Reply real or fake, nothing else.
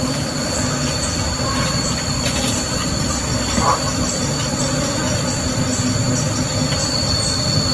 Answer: real